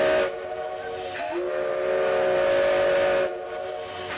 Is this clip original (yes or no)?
yes